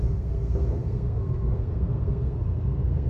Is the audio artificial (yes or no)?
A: yes